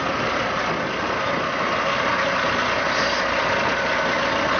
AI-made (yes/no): no